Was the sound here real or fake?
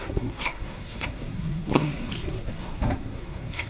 fake